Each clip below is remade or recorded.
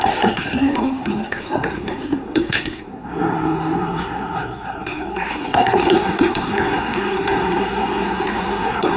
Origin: remade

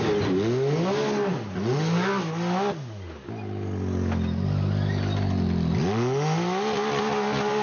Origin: recorded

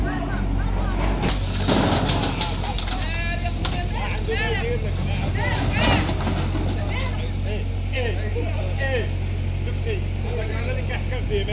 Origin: recorded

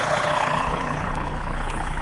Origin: remade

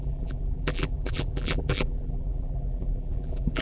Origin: remade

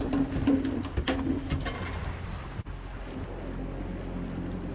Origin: recorded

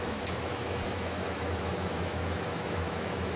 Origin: remade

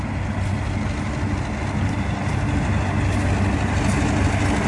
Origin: recorded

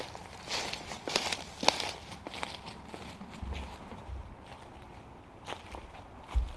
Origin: recorded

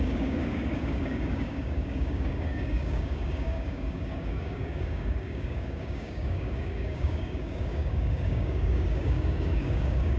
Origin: remade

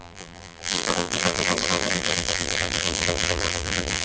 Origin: remade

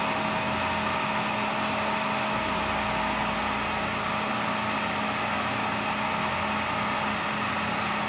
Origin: recorded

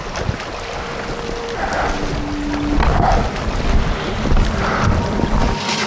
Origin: recorded